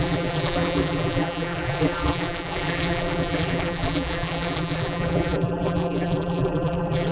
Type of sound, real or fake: fake